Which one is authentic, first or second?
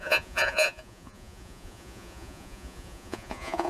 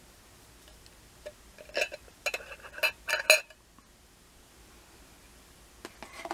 second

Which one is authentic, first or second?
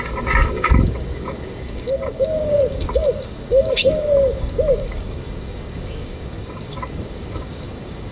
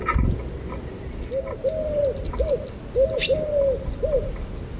second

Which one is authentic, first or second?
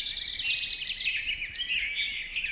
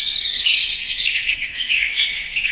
first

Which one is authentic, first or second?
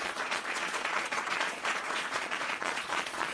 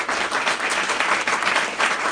second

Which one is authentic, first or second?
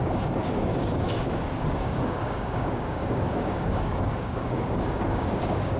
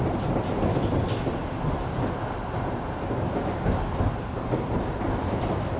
second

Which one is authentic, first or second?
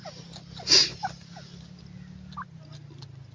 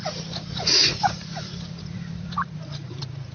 first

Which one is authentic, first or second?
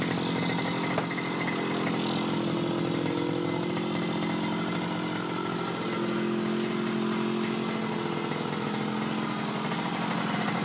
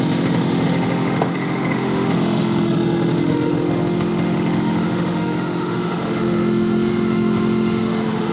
first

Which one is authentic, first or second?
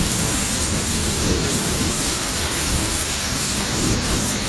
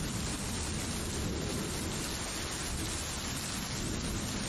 second